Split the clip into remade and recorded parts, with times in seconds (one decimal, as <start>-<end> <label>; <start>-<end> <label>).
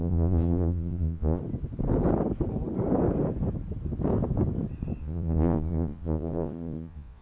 0.0-1.4 remade; 1.4-5.0 recorded; 5.0-7.2 remade